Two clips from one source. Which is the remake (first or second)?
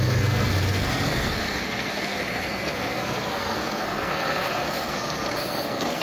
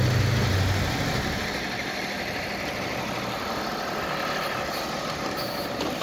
first